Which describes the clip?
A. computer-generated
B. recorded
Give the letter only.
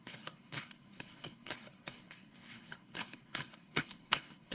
A